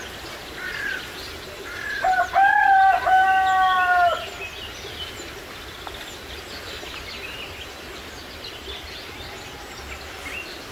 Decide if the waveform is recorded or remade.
recorded